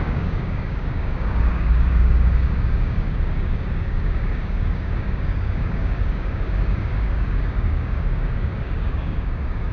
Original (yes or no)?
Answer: no